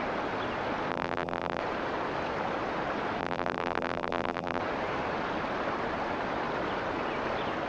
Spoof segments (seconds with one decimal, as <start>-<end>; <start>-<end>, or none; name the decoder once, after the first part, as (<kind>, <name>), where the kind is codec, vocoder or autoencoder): 0.9-1.6 (vocoder, BigVGAN v2); 3.2-4.6